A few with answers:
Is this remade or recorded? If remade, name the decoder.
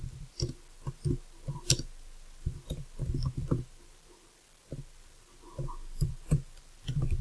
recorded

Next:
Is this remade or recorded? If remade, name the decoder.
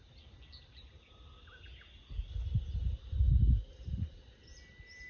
recorded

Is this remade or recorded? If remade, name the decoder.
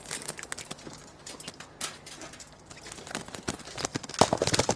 recorded